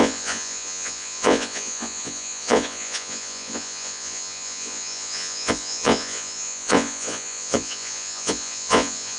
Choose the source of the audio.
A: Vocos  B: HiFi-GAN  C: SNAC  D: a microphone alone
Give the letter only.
A